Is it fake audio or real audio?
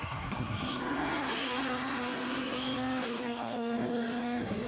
fake